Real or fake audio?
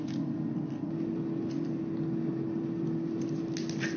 real